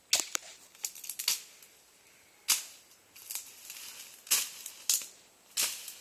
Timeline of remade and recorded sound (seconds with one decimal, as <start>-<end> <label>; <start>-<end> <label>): 0.0-6.0 recorded